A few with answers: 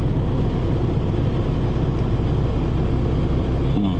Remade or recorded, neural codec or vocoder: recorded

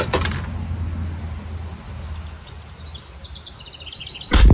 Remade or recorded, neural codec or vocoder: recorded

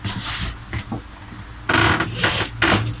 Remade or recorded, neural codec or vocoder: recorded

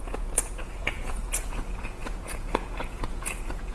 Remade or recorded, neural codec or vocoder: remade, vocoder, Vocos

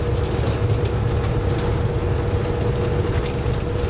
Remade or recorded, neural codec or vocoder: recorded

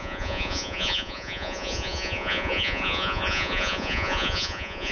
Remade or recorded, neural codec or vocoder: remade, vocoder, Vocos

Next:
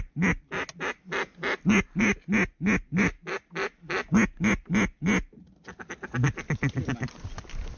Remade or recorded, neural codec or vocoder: recorded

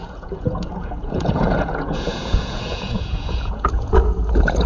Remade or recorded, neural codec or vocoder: remade, vocoder, Vocos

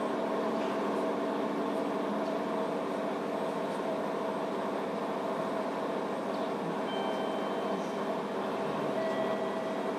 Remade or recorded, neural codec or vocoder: recorded